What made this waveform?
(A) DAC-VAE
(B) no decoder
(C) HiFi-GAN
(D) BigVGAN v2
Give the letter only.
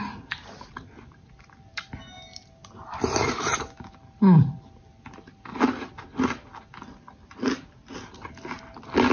B